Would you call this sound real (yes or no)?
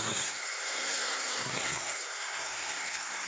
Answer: no